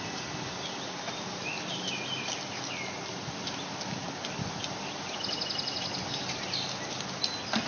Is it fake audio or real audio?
real